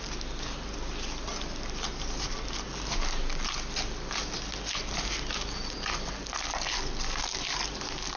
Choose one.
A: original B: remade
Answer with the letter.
A